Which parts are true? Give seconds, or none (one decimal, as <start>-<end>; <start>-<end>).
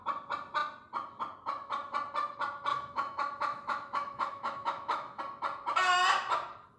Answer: 0.0-2.7; 5.2-6.8